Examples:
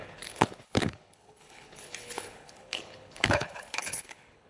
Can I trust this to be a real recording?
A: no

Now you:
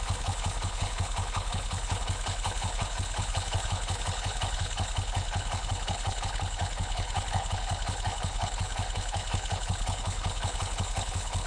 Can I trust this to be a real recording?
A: no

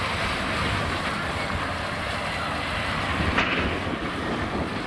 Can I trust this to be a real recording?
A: yes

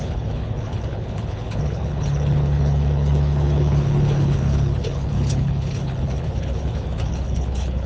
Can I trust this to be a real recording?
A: no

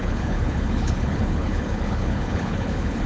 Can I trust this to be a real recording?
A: no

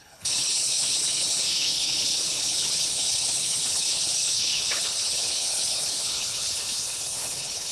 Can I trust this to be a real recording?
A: no